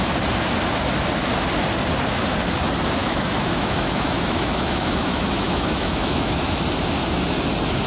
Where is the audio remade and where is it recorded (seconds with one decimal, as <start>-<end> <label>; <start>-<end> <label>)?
0.0-3.0 recorded; 3.0-6.6 remade; 6.6-7.9 recorded